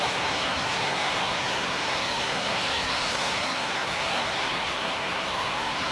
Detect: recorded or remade remade